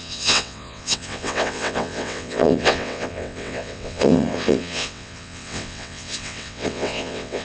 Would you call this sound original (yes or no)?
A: no